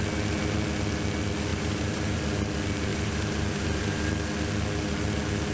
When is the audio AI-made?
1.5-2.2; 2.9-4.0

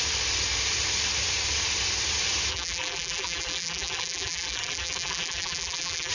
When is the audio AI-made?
2.5-6.1

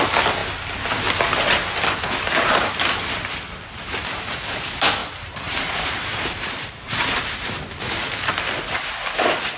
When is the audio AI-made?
5.0-7.0

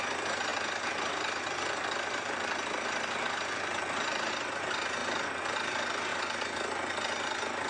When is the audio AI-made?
0.5-4.3

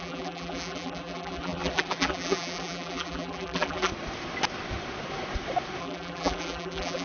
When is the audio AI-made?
0.0-3.9; 5.8-7.0

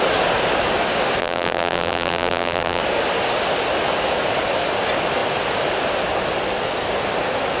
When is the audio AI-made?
1.2-2.8

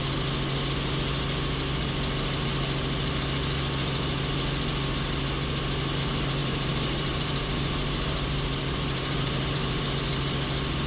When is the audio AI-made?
6.4-9.9